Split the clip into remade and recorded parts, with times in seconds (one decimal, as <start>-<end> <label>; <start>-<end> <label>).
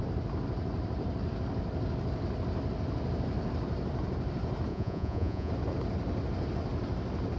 0.0-4.7 recorded; 4.7-5.5 remade; 5.5-7.4 recorded